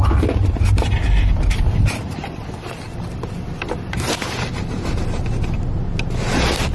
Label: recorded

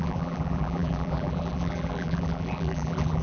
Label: remade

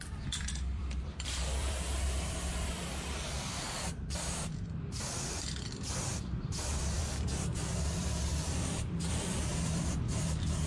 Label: remade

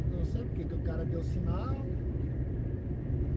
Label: recorded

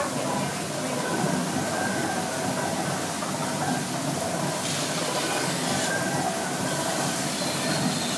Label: recorded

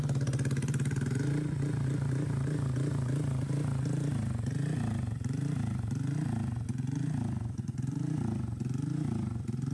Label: remade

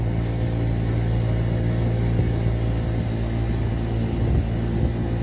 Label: recorded